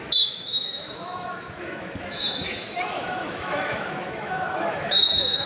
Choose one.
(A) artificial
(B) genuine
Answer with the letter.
A